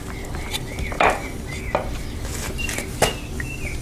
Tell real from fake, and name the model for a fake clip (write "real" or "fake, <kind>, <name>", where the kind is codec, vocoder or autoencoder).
real